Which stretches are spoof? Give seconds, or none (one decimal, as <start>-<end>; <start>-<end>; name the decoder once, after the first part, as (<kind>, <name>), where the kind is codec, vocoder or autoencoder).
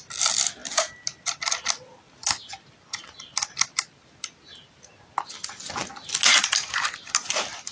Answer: none